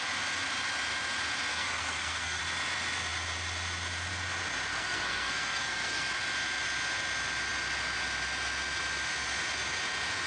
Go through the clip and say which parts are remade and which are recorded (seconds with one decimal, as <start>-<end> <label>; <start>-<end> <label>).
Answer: 0.0-1.5 recorded; 1.5-2.4 remade; 2.4-4.7 recorded; 4.7-6.1 remade; 6.1-10.3 recorded

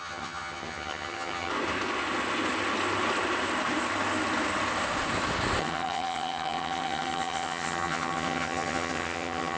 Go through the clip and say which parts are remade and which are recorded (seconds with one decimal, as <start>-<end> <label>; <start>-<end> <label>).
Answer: 0.0-1.5 remade; 1.5-5.6 recorded; 5.6-9.6 remade